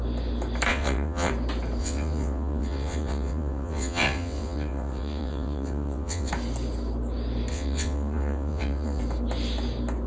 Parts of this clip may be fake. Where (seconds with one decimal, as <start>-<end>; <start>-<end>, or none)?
0.7-1.3; 1.8-6.3; 7.5-9.0